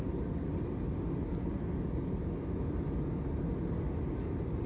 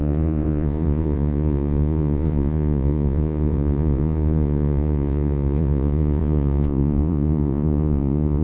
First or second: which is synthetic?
second